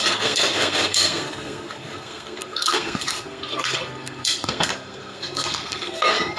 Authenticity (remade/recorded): remade